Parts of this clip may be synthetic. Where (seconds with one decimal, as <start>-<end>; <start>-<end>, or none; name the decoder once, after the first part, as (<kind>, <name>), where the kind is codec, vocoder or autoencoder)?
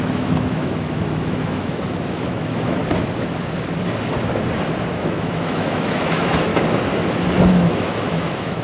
0.0-2.8 (autoencoder, DAC-VAE); 4.9-6.5; 7.5-8.6